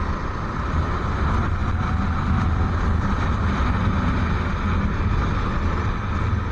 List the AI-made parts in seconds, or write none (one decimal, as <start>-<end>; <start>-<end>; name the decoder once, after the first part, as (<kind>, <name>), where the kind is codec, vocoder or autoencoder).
none